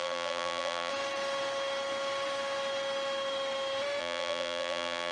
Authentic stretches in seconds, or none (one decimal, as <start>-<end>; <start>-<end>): 0.9-4.0

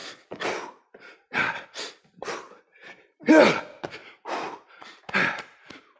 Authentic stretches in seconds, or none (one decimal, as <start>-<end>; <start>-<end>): 0.6-2.7; 3.3-4.0; 4.7-6.0